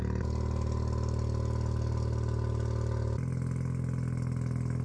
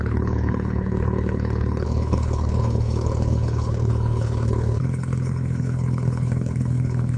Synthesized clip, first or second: second